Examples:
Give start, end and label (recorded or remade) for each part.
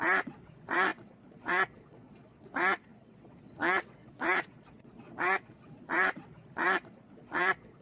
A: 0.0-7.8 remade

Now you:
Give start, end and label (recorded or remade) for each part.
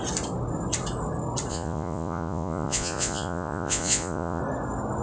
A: 0.0-1.5 recorded; 1.5-4.4 remade; 4.4-5.0 recorded